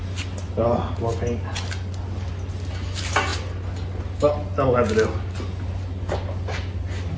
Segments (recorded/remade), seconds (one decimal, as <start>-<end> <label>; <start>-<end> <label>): 0.0-7.2 recorded